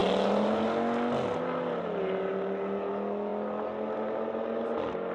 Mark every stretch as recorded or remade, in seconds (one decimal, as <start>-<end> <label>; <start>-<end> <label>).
0.0-5.1 recorded